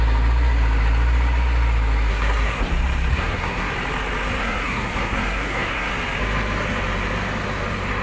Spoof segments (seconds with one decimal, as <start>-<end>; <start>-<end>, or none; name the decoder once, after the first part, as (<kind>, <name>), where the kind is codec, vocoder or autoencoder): 2.1-2.6 (codec, SNAC); 3.1-3.7; 4.4-5.9